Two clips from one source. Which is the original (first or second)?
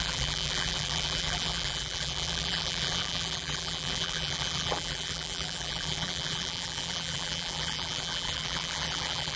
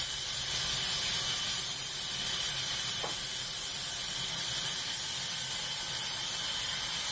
second